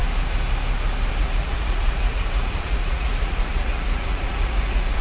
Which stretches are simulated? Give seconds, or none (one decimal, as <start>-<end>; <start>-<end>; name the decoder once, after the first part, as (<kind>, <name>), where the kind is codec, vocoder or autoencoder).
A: 1.2-5.0 (vocoder, Vocos)

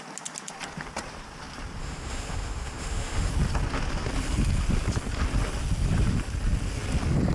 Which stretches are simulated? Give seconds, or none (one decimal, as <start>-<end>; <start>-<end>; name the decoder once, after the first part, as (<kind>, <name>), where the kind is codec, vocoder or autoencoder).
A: 1.8-3.3 (autoencoder, DAC-VAE)

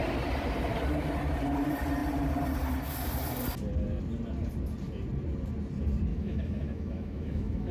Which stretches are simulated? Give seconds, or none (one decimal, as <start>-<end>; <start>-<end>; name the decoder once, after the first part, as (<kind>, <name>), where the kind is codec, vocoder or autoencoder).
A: 6.1-7.7 (autoencoder, DAC-VAE)

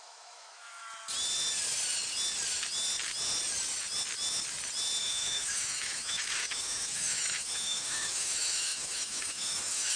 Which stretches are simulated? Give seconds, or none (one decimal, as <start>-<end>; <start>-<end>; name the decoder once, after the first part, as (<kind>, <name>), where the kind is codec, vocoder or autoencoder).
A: 0.0-0.8 (autoencoder, DAC-VAE); 5.0-10.0

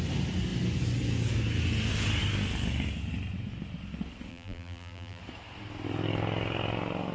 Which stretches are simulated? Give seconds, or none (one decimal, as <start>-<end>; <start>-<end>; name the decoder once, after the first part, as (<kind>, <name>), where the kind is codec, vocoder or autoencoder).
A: 4.3-5.2 (vocoder, BigVGAN v2)